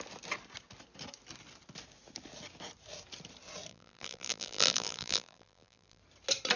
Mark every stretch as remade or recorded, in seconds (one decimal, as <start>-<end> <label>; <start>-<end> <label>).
0.0-3.7 recorded; 3.7-6.0 remade; 6.0-6.6 recorded